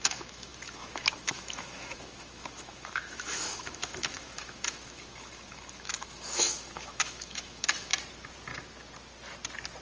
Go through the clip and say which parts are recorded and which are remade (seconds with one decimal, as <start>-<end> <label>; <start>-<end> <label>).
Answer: 0.0-7.9 remade; 7.9-9.8 recorded